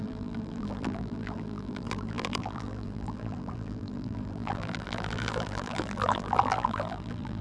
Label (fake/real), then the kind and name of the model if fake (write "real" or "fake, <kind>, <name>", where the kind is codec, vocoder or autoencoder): fake, vocoder, BigVGAN v2